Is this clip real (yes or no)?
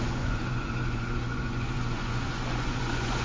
no